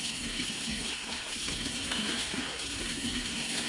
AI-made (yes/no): yes